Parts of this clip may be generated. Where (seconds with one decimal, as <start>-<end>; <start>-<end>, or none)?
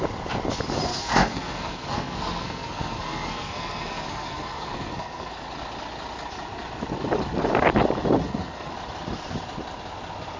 0.9-5.3; 8.2-8.7